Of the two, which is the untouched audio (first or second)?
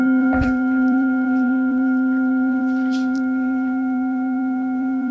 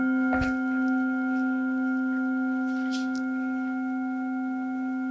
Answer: second